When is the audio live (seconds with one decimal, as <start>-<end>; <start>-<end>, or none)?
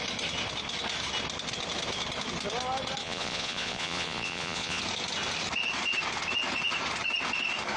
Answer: 0.0-3.0; 4.8-7.8